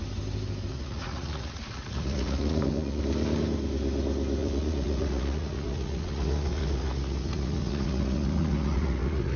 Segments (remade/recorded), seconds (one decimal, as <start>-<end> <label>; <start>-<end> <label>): 0.0-0.7 recorded; 0.7-3.0 remade; 3.0-4.4 recorded; 4.4-9.4 remade